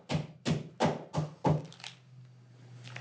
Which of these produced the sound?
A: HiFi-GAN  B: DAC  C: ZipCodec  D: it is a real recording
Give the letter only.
D